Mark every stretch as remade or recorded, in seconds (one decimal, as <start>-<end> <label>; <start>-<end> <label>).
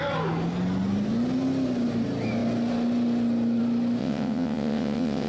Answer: 0.0-4.0 recorded; 4.0-5.3 remade